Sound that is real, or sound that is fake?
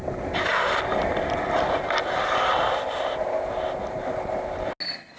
real